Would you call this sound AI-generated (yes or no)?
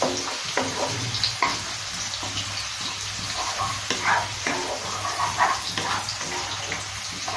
no